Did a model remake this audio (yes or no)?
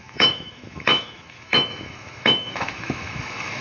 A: yes